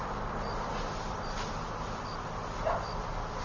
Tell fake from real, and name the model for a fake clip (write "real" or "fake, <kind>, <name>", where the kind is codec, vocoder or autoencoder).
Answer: real